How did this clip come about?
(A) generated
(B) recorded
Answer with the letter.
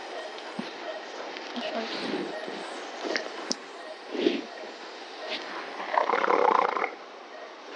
B